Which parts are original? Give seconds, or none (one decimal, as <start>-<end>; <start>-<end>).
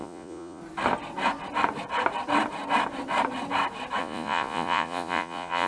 0.6-4.0